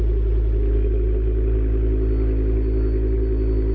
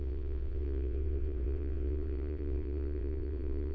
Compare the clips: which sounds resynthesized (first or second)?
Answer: second